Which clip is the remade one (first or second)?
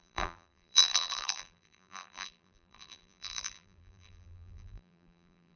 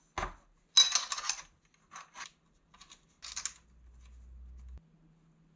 first